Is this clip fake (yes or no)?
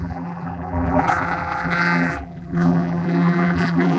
yes